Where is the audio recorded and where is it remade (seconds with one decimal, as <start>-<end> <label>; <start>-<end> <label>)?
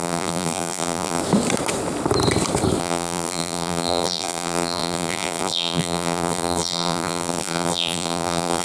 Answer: 0.0-1.2 remade; 1.2-2.8 recorded; 2.8-8.6 remade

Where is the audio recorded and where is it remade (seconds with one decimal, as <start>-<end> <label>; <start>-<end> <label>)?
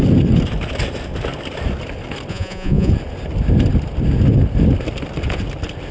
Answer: 0.0-2.3 recorded; 2.3-2.9 remade; 2.9-5.9 recorded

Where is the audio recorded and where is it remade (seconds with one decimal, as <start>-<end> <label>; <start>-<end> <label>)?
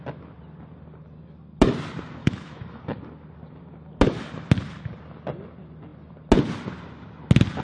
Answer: 0.0-2.2 recorded; 2.2-2.8 remade; 2.8-7.6 recorded